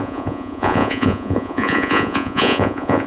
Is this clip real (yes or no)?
no